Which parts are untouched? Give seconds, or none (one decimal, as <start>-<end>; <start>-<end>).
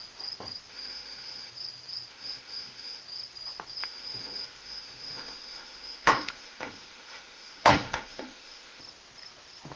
0.0-0.7; 1.5-2.1; 3.0-3.8; 8.8-9.8